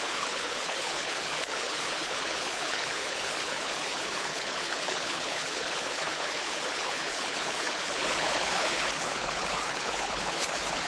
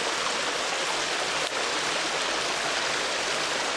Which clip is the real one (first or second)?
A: second